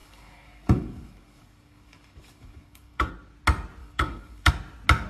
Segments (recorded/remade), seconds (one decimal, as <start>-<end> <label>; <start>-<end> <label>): 0.0-3.1 remade; 3.1-3.8 recorded; 3.8-4.5 remade; 4.5-5.1 recorded